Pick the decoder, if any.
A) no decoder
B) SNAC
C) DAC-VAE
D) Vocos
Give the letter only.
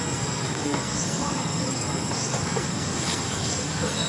B